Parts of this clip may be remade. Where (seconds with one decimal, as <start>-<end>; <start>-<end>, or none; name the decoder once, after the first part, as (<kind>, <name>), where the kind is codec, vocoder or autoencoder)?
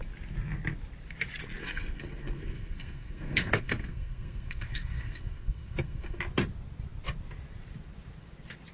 1.6-6.2 (codec, SNAC)